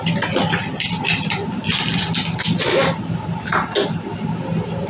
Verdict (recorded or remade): recorded